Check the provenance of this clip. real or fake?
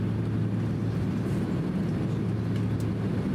real